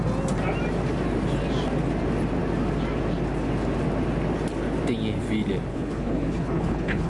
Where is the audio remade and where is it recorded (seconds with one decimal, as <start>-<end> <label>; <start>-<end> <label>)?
0.0-5.7 recorded; 5.7-7.1 remade